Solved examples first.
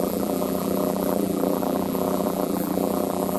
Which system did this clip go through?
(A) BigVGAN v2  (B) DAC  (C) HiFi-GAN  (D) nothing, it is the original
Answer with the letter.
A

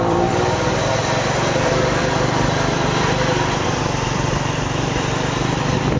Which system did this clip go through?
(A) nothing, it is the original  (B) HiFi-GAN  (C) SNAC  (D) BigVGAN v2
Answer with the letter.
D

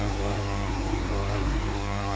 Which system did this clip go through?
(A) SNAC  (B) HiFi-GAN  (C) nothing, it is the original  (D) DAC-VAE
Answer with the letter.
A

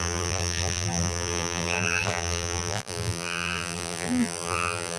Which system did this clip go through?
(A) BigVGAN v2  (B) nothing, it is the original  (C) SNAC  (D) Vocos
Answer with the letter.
A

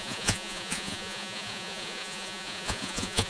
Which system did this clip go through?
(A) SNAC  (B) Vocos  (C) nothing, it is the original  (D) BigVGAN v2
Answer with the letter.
B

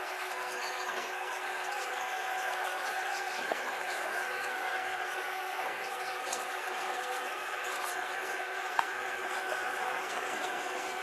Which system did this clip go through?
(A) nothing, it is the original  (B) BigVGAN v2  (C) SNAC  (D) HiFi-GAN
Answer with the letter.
C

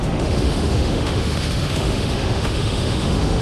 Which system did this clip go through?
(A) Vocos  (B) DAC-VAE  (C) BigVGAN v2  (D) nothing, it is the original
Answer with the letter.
B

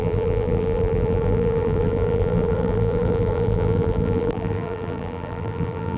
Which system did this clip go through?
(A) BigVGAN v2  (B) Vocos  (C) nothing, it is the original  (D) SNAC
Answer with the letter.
A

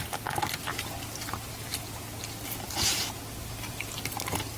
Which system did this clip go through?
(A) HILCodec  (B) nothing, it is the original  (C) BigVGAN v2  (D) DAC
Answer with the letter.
B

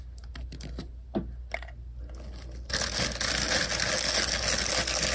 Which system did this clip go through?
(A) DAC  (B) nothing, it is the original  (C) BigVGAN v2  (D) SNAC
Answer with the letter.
B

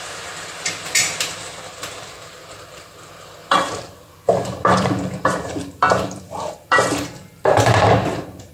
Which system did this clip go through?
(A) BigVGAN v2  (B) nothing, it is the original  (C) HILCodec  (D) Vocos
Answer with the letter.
A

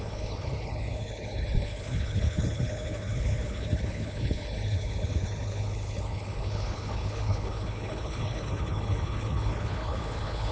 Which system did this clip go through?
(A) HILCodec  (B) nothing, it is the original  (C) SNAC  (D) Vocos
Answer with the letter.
A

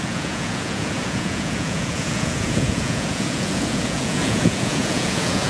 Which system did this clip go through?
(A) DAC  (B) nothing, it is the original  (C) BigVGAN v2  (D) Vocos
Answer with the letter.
D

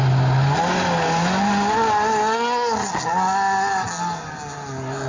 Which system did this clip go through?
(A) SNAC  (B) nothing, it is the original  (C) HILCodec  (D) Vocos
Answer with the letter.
B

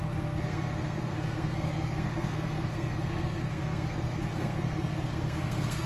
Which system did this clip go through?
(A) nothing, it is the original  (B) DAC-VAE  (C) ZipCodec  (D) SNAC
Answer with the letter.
D